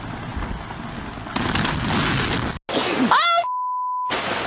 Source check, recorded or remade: recorded